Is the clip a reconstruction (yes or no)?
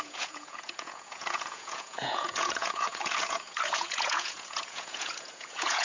yes